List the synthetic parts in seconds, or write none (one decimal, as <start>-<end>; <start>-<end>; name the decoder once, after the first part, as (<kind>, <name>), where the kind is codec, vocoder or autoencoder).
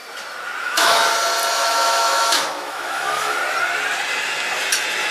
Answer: 0.6-1.0 (autoencoder, DAC-VAE); 1.5-3.4